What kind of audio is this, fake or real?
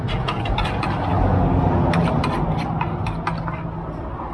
real